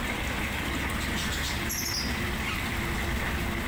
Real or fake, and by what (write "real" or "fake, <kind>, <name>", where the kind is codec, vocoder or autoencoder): real